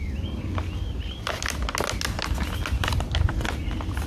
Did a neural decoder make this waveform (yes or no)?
no